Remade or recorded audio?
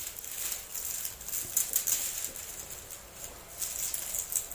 recorded